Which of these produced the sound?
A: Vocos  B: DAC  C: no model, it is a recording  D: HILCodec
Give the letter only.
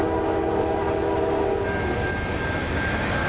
C